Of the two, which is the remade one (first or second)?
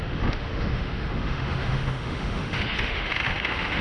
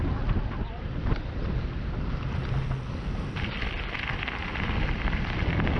first